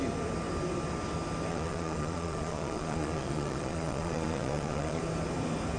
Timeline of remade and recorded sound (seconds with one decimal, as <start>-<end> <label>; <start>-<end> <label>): 0.0-1.5 recorded; 1.5-5.0 remade; 5.0-5.8 recorded